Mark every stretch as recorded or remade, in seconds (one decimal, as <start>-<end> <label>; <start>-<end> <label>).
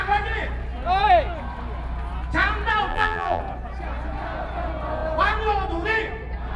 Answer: 0.0-2.9 recorded; 2.9-3.4 remade; 3.4-6.6 recorded